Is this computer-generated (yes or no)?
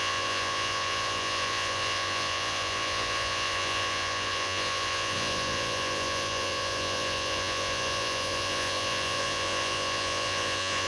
yes